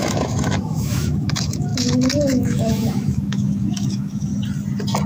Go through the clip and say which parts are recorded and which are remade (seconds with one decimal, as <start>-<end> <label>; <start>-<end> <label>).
0.0-4.3 remade; 4.3-5.1 recorded